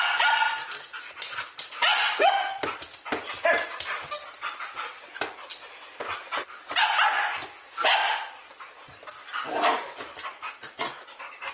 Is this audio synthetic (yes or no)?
no